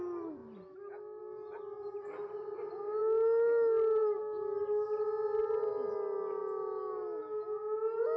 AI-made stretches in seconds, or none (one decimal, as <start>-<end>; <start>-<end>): none